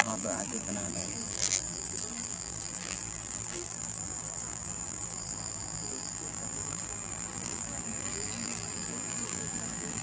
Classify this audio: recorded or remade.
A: remade